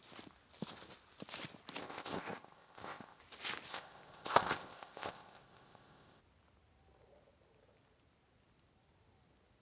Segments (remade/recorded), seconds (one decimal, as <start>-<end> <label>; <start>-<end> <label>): 0.0-1.8 recorded; 1.8-3.2 remade; 3.2-3.7 recorded; 3.7-6.2 remade; 6.2-9.6 recorded